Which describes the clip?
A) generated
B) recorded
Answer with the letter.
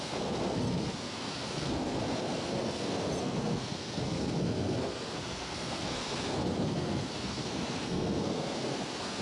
A